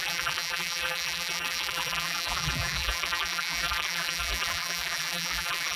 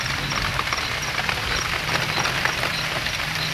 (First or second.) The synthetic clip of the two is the first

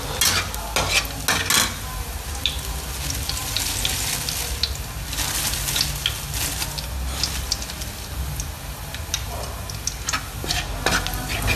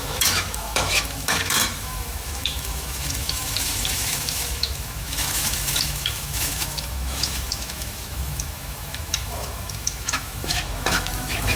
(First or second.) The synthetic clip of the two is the second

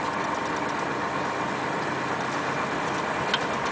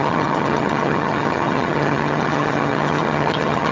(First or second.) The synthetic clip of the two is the second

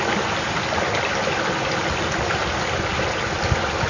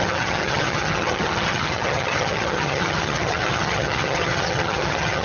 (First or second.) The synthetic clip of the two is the second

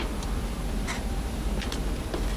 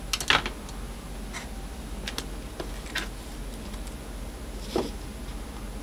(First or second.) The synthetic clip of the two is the first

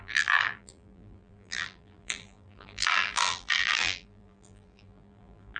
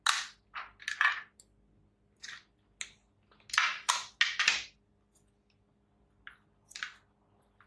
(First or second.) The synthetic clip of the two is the first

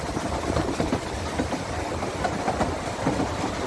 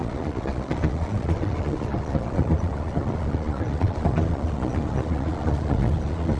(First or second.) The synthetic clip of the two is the second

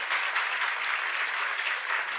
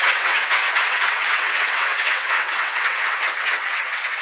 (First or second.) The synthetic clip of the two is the second